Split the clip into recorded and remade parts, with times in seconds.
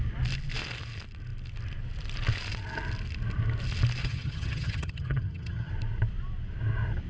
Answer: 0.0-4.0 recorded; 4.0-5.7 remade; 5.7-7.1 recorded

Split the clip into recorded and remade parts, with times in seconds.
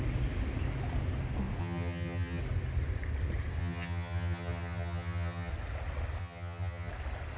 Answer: 0.0-1.6 recorded; 1.6-2.4 remade; 2.4-3.6 recorded; 3.6-5.5 remade; 5.5-6.2 recorded; 6.2-6.9 remade; 6.9-7.4 recorded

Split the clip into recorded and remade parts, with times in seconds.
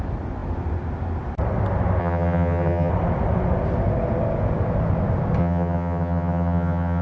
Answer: 0.0-2.0 recorded; 2.0-2.9 remade; 2.9-5.4 recorded; 5.4-7.0 remade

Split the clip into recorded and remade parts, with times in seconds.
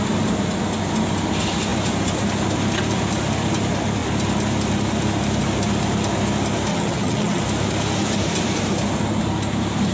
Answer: 0.0-6.7 recorded; 6.7-7.4 remade; 7.4-9.9 recorded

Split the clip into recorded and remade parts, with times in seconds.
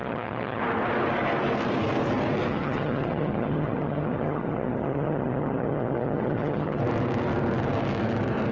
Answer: 0.0-0.6 remade; 0.6-2.5 recorded; 2.5-6.8 remade; 6.8-8.5 recorded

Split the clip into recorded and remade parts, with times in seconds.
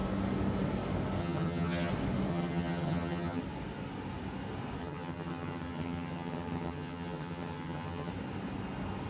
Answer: 0.0-1.2 recorded; 1.2-1.9 remade; 1.9-2.3 recorded; 2.3-3.4 remade; 3.4-4.8 recorded; 4.8-8.1 remade; 8.1-9.1 recorded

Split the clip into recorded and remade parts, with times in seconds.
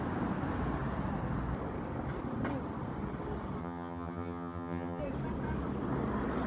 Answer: 0.0-3.6 recorded; 3.6-5.0 remade; 5.0-6.5 recorded